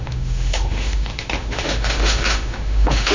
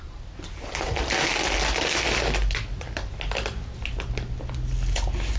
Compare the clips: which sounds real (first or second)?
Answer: second